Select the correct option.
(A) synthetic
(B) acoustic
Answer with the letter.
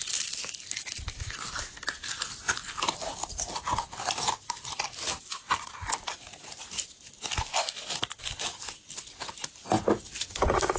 B